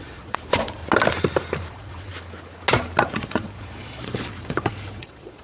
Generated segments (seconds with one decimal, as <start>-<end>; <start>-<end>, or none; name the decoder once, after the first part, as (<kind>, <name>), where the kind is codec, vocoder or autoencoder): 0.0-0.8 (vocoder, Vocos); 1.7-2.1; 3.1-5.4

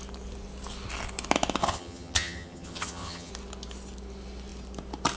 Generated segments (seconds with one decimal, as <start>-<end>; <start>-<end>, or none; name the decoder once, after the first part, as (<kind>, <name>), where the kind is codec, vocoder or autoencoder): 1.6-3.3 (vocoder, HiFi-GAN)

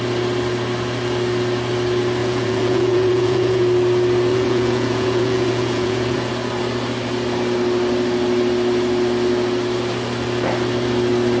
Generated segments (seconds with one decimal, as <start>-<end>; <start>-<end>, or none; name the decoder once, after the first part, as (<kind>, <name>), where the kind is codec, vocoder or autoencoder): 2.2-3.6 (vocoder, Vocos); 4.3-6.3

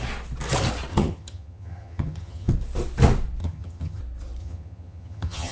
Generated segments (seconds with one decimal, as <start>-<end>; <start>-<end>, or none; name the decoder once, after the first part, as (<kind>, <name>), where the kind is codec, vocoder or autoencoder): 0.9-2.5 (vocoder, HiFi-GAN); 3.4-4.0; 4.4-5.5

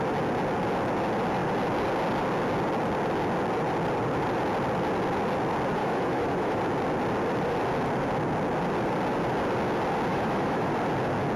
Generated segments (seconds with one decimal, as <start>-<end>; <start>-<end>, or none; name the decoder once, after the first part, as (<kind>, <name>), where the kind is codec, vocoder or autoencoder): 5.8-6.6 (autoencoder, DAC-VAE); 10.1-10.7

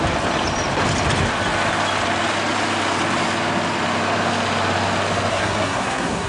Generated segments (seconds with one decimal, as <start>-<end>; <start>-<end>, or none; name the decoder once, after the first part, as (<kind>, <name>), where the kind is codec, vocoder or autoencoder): 5.3-6.3 (codec, SNAC)